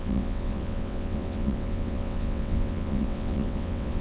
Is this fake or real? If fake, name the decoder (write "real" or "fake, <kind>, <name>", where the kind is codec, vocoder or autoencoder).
fake, vocoder, WaveNeXt